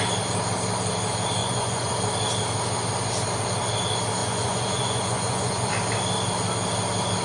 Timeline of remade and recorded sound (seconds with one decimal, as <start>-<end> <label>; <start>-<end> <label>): 0.0-1.4 recorded; 1.4-1.9 remade; 1.9-4.2 recorded; 4.2-5.7 remade; 5.7-7.2 recorded